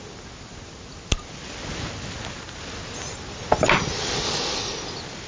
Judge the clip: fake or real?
real